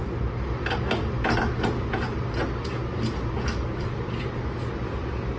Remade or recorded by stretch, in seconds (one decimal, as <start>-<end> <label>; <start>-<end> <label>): 0.0-5.4 recorded